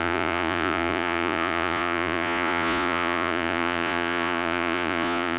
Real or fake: fake